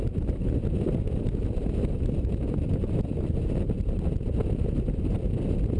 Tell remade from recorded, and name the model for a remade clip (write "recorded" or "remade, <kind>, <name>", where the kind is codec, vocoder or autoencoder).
remade, vocoder, BigVGAN v2